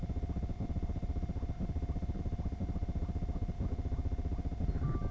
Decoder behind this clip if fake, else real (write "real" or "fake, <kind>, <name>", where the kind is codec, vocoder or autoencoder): real